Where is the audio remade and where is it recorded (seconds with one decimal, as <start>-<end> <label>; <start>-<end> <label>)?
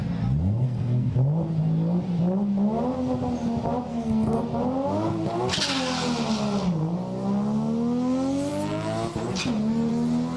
0.0-0.4 recorded; 0.4-1.1 remade; 1.1-3.9 recorded; 3.9-4.4 remade; 4.4-10.4 recorded